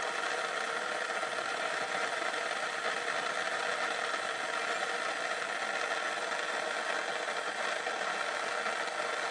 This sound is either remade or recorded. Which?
recorded